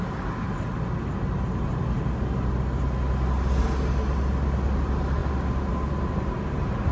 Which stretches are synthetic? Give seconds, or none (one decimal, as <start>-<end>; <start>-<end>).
none